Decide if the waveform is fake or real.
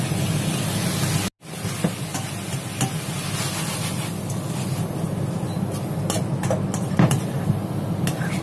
real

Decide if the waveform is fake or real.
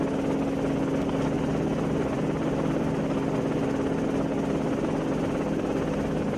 real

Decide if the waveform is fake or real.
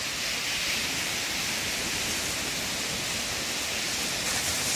real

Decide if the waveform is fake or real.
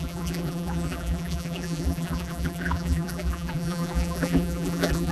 fake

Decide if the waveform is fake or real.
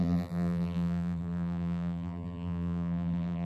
fake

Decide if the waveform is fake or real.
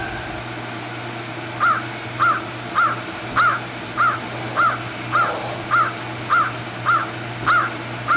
real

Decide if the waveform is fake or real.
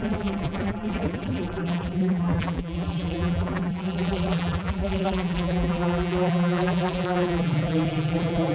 fake